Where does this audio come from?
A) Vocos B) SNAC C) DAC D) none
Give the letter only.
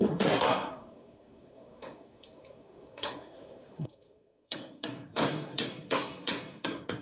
B